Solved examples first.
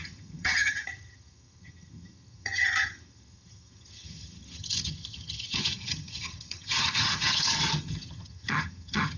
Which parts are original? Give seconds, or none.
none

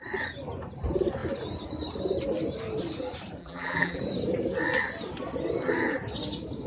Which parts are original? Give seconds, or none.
0.0-3.4; 4.0-6.7

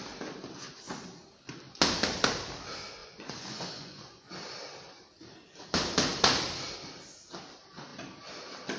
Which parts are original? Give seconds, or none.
0.0-3.0; 4.3-8.8

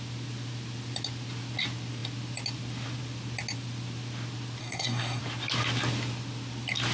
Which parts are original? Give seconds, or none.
0.0-4.6; 5.2-6.9

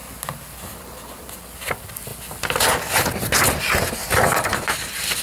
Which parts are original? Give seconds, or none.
0.0-5.2

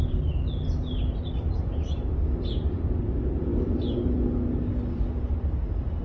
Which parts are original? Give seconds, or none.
0.0-6.0

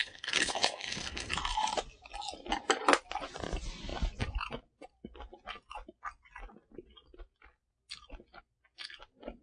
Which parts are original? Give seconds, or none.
1.3-9.4